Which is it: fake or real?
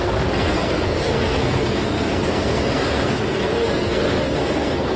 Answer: fake